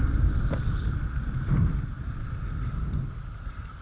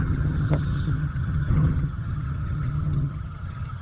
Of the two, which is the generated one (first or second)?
second